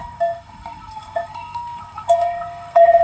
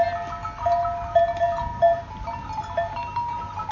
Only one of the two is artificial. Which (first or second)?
first